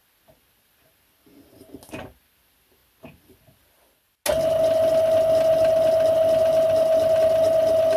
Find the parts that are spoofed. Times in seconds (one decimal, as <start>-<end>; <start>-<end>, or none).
none